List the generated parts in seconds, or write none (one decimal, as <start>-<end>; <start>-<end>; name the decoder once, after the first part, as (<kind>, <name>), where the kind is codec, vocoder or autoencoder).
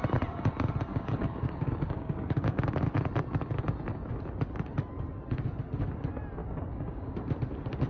0.9-2.7 (codec, DAC); 6.4-7.1